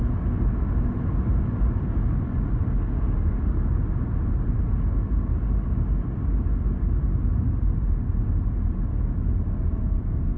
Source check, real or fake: real